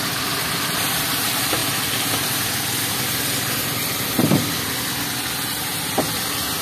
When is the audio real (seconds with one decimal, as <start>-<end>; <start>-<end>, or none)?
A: 0.0-6.6